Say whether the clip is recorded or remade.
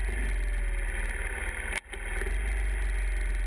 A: recorded